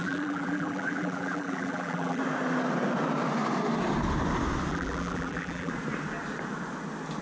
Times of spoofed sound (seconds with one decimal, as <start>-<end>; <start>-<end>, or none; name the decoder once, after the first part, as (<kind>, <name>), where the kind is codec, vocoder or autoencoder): 0.0-2.2 (vocoder, BigVGAN v2); 4.7-5.7